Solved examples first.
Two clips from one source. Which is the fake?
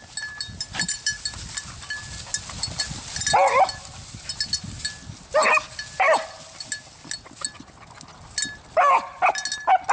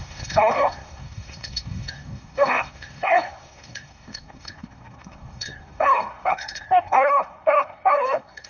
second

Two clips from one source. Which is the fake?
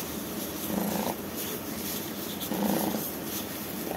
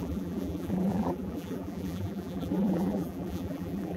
second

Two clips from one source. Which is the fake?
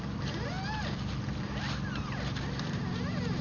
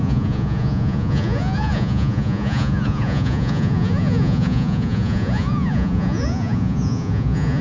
second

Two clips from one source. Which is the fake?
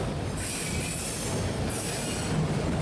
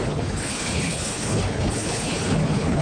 second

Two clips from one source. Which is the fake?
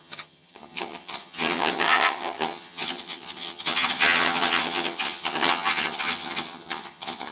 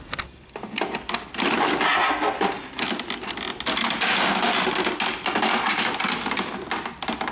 first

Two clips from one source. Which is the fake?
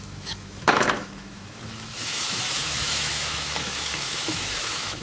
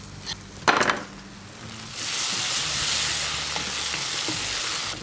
first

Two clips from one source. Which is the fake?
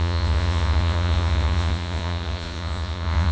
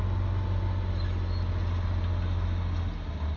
first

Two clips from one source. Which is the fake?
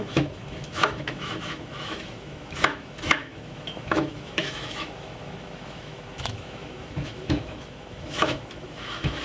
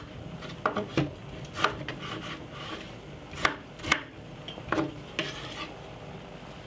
first